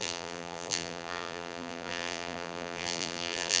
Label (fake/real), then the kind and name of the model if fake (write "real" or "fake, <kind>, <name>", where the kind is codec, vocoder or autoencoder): fake, vocoder, BigVGAN v2